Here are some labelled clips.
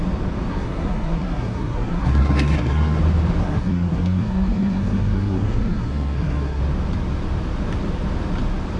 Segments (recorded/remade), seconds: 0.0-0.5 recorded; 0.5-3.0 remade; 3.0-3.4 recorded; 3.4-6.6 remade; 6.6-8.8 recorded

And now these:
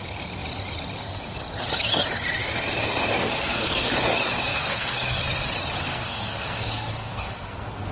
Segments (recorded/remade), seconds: 0.0-3.2 recorded; 3.2-3.9 remade; 3.9-4.5 recorded; 4.5-5.2 remade; 5.2-5.9 recorded; 5.9-7.9 remade

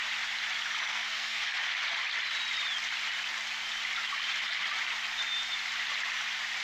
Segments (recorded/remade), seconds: 0.0-0.9 recorded; 0.9-1.5 remade; 1.5-6.6 recorded

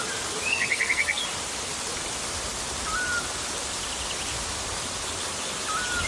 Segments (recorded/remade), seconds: 0.0-0.5 recorded; 0.5-1.2 remade; 1.2-6.1 recorded

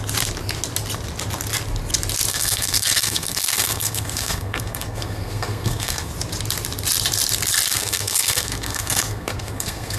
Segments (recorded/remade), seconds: 0.0-2.3 recorded; 2.3-6.1 remade; 6.1-7.7 recorded; 7.7-10.0 remade